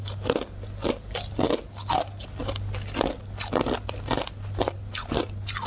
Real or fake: real